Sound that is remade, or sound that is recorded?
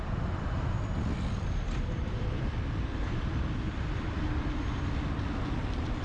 remade